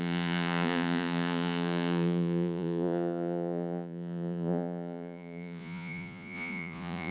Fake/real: fake